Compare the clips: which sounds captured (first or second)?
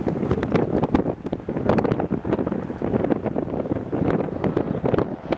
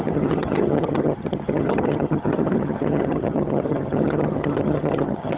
first